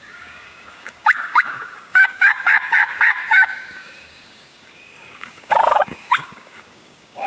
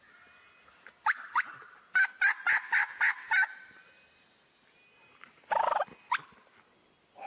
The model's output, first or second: first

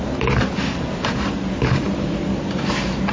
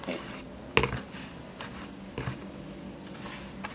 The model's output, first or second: first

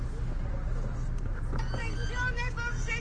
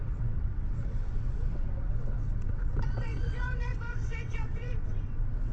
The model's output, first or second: second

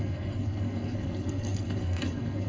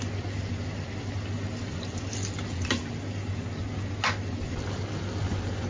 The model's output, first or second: first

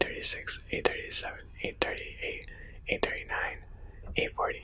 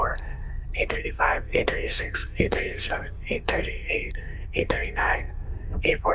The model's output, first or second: second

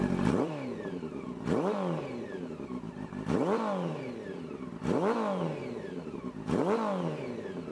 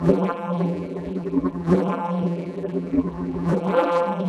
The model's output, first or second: second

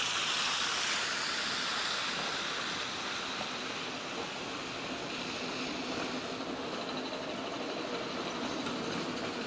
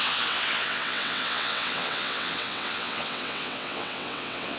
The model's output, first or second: second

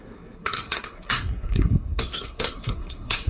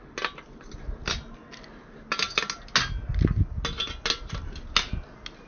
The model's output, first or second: first